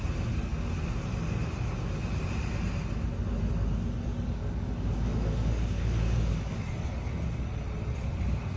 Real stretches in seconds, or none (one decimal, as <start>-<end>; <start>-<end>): 0.0-4.4; 6.6-8.6